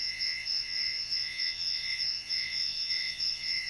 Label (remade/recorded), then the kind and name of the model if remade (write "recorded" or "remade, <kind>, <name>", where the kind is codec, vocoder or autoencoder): remade, vocoder, Vocos